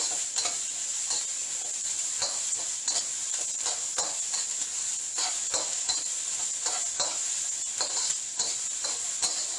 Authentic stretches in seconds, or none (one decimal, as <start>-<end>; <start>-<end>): none